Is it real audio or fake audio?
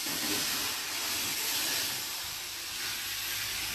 real